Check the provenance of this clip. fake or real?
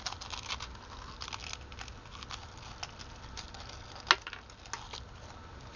real